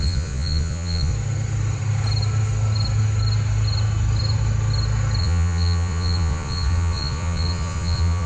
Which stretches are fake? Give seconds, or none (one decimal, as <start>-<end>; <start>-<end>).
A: 0.0-1.1; 5.2-8.3